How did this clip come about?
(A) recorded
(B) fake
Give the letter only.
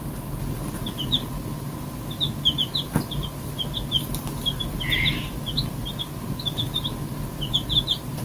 A